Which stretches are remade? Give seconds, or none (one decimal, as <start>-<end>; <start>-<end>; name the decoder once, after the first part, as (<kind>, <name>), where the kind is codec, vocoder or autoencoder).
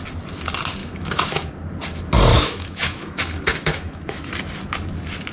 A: 0.8-1.5 (autoencoder, DAC-VAE); 2.3-4.3